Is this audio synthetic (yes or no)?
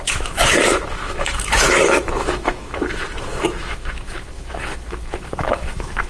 yes